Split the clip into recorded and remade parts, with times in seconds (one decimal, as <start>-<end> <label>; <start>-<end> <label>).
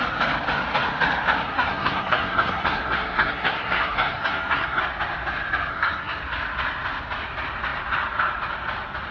0.0-1.5 recorded; 1.5-4.8 remade; 4.8-5.7 recorded; 5.7-6.2 remade; 6.2-9.1 recorded